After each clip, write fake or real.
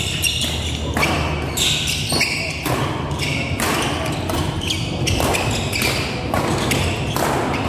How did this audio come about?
real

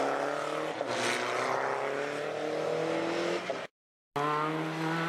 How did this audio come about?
real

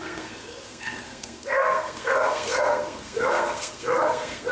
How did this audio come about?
fake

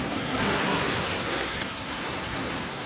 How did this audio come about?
fake